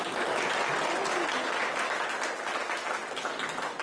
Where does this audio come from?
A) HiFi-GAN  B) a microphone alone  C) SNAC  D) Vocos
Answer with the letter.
B